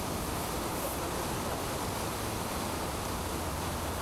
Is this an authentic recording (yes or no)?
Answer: yes